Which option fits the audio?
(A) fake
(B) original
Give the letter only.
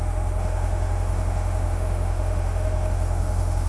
A